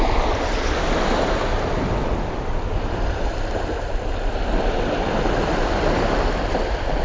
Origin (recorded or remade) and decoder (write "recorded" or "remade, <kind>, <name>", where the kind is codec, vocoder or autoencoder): recorded